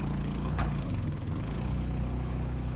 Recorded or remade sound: remade